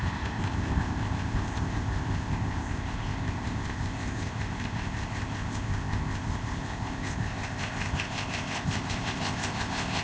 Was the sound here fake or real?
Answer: fake